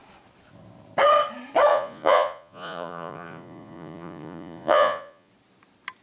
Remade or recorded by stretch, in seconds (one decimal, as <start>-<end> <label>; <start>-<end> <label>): 0.0-1.7 recorded; 1.7-5.3 remade; 5.3-6.0 recorded